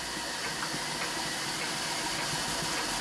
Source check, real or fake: real